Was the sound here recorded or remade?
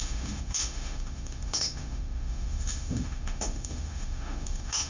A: remade